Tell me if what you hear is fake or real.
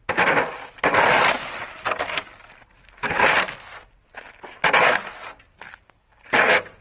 real